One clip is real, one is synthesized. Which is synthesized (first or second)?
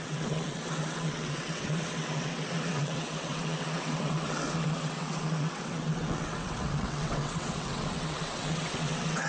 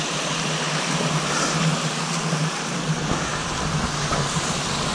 first